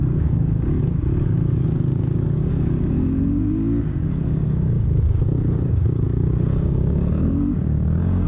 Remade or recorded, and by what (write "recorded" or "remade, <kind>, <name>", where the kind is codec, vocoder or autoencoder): remade, codec, DAC